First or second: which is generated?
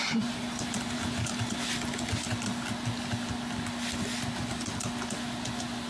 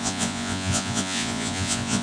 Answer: second